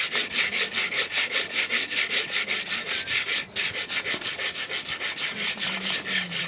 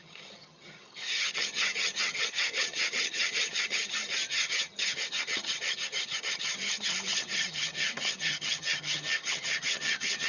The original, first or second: first